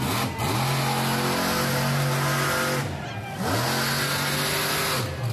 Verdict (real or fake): real